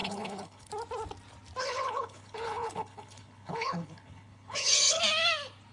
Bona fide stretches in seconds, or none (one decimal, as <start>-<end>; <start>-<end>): 0.7-1.6; 5.0-5.7